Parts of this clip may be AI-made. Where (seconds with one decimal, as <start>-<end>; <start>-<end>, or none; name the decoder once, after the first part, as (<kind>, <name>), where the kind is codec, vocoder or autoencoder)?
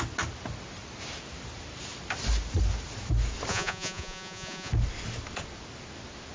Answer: 3.5-4.7 (vocoder, Vocos)